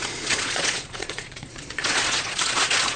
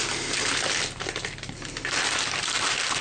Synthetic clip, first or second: first